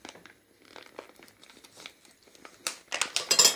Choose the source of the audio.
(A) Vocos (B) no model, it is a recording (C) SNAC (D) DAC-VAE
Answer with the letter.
B